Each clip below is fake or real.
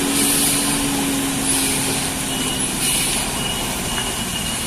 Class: real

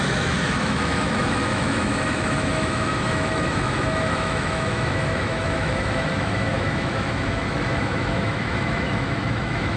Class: fake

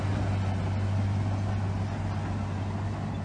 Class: real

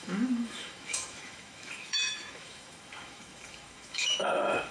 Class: fake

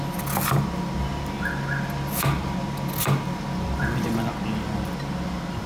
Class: real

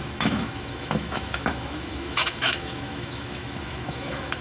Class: fake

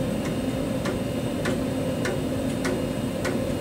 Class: real